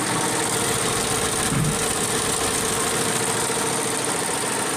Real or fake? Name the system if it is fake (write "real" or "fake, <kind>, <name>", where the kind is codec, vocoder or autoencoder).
real